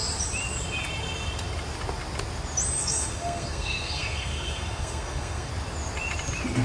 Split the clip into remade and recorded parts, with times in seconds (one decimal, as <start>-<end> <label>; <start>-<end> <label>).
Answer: 0.0-2.8 recorded; 2.8-5.5 remade; 5.5-6.6 recorded